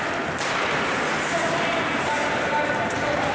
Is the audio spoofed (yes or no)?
no